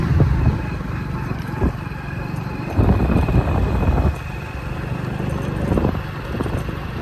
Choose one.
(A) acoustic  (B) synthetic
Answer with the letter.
A